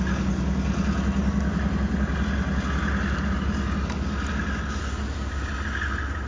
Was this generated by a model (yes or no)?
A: no